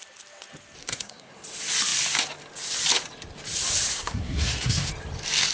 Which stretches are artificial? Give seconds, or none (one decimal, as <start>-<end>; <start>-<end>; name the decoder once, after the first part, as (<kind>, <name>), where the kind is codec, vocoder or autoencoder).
0.8-1.3 (codec, SNAC); 3.9-4.9